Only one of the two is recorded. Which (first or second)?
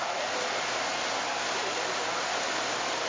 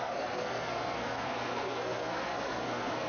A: first